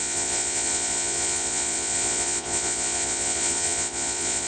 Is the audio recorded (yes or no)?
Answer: no